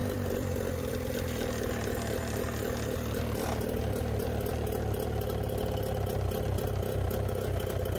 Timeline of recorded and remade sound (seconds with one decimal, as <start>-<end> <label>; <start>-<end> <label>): 0.0-0.9 remade; 0.9-8.0 recorded